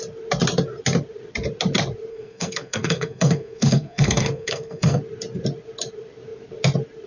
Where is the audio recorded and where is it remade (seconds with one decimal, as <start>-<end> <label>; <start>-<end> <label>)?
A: 0.0-2.1 recorded; 2.1-5.0 remade; 5.0-7.1 recorded